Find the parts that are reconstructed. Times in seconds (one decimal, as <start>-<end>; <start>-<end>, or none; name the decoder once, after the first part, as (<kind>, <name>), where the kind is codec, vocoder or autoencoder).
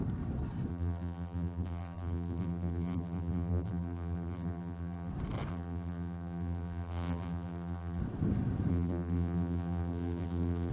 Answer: 0.7-5.1 (vocoder, BigVGAN v2); 5.5-8.0; 8.7-10.7